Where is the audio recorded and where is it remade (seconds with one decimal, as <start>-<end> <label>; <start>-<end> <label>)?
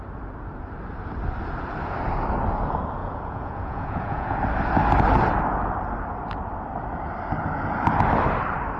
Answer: 0.0-3.0 recorded; 3.0-4.4 remade; 4.4-8.8 recorded